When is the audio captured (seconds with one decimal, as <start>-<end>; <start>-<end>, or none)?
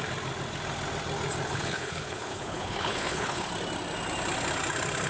0.0-1.5; 3.5-5.1